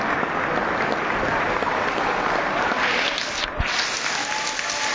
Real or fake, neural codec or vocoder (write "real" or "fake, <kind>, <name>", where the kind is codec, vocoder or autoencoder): real